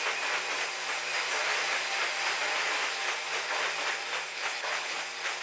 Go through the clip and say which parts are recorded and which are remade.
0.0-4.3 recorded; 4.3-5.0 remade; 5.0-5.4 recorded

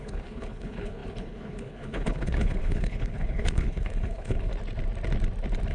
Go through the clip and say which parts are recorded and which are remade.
0.0-4.5 remade; 4.5-5.7 recorded

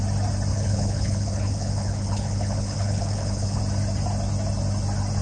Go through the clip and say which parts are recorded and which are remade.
0.0-0.5 recorded; 0.5-3.6 remade; 3.6-5.2 recorded